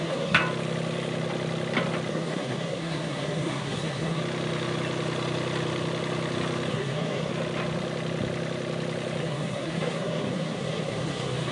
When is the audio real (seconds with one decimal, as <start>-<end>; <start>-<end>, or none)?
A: 0.4-2.1; 4.2-6.7; 7.3-9.2